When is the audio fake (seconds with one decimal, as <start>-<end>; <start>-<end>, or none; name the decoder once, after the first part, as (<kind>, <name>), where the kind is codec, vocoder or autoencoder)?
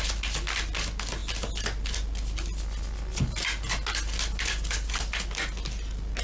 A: none